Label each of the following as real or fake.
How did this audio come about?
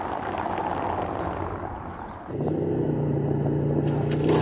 real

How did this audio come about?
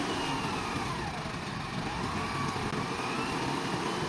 real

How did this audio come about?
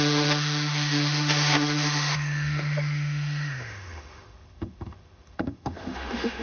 fake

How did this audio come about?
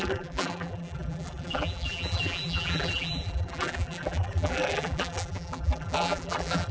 fake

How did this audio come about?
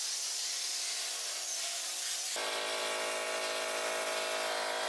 real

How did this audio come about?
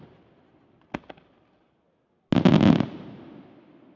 real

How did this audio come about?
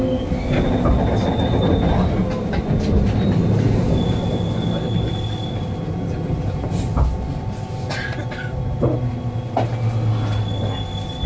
real